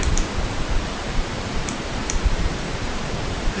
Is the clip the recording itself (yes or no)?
no